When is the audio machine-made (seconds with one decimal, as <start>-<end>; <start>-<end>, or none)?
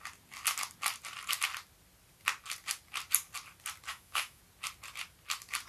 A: 3.9-4.4